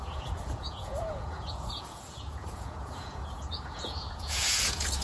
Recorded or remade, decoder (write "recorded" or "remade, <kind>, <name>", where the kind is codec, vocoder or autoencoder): remade, vocoder, Vocos